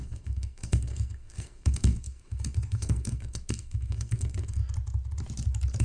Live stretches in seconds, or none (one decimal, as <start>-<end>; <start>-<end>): 4.6-5.8